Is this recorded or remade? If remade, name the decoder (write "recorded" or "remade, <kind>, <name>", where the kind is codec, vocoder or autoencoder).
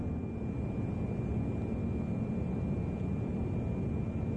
recorded